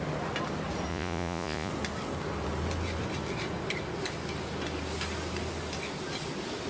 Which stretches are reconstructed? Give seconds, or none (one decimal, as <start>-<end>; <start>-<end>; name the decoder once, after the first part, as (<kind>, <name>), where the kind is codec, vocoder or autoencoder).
0.9-1.7 (vocoder, Vocos)